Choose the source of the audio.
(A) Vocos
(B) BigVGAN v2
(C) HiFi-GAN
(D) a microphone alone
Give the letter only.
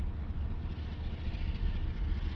D